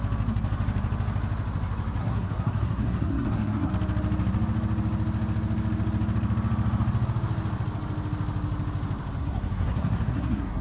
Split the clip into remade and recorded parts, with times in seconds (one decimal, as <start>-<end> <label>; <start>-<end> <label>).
0.0-2.0 recorded; 2.0-3.7 remade; 3.7-9.2 recorded; 9.2-10.6 remade